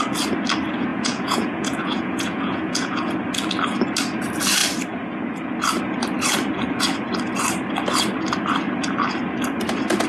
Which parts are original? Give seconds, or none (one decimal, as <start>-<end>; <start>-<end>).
0.0-0.9; 3.1-10.1